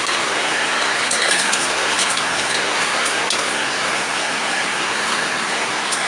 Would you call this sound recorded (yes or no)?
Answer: no